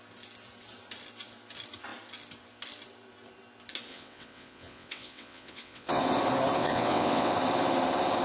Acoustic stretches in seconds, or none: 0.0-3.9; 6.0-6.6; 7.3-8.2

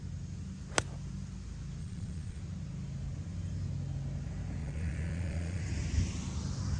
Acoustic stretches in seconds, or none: 0.0-1.8; 2.4-4.6; 5.6-6.8

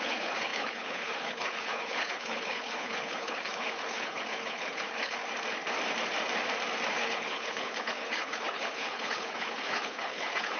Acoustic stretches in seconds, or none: 5.2-6.9

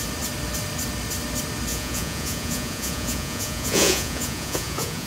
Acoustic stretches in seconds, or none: 0.0-1.7

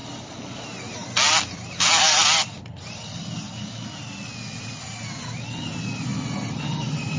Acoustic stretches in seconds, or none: 0.0-7.2

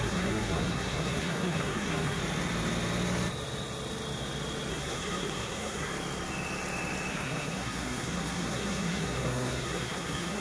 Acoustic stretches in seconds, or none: 2.2-4.7; 5.9-7.1

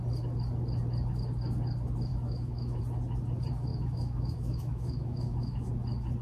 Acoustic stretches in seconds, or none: 0.0-2.1; 2.8-3.7; 5.7-6.2